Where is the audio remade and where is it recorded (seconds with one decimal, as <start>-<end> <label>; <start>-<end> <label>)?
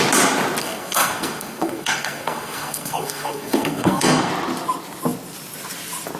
0.0-0.6 recorded; 0.6-4.3 remade; 4.3-6.2 recorded